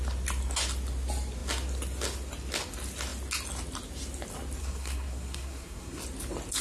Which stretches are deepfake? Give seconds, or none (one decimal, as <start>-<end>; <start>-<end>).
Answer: 4.6-6.0